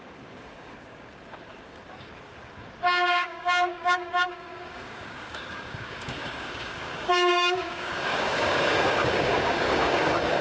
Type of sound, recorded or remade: remade